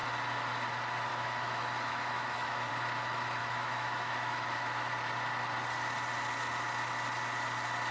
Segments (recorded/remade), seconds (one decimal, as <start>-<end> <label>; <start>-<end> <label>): 0.0-1.1 recorded; 1.1-2.7 remade; 2.7-3.4 recorded; 3.4-4.9 remade; 4.9-7.9 recorded